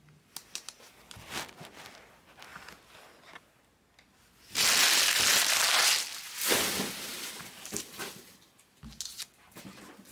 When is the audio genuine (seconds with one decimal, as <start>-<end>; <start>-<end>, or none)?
0.0-10.1